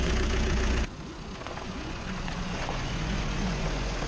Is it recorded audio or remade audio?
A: remade